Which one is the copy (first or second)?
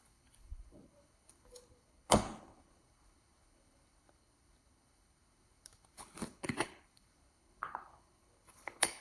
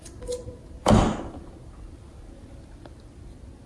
first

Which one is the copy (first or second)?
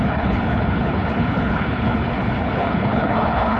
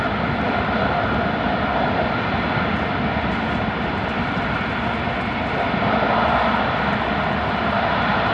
first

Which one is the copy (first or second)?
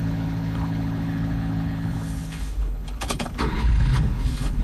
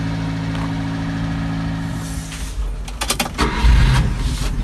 first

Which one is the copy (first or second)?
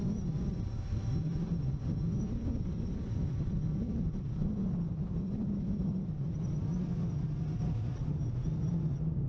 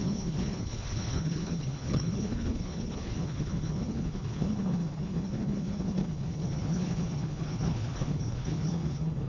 second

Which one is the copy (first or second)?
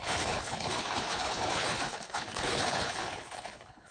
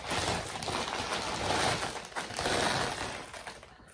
first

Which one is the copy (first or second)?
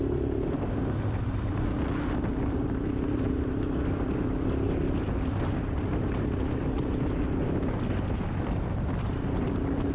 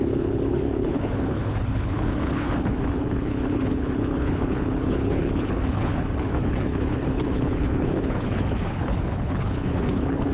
second